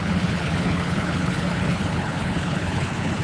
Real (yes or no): no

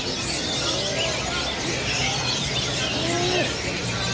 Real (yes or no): yes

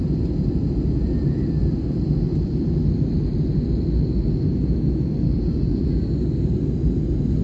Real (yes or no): yes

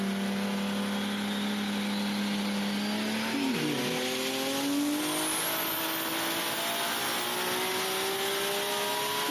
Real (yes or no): yes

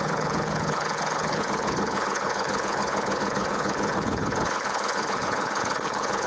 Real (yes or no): no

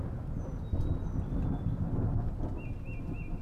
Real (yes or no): yes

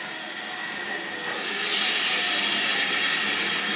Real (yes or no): yes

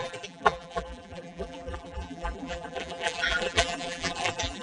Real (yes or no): no